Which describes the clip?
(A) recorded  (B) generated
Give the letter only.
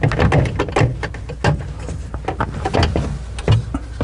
A